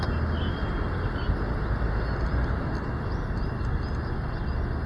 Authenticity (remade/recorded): recorded